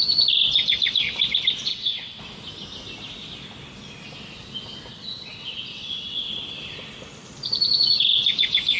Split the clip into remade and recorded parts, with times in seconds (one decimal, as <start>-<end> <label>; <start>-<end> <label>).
0.0-1.7 recorded; 1.7-2.2 remade; 2.2-4.9 recorded; 4.9-6.3 remade; 6.3-8.8 recorded